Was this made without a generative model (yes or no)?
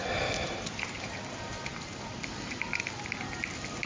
yes